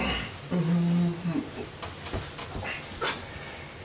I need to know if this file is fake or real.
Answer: real